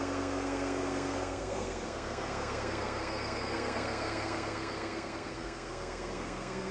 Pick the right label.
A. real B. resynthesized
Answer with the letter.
B